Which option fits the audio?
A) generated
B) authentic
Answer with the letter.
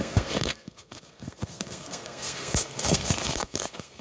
A